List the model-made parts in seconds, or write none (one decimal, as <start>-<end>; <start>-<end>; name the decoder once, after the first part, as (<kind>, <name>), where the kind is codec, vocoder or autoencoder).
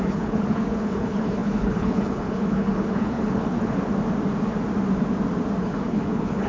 0.0-3.8 (codec, HILCodec); 5.6-6.5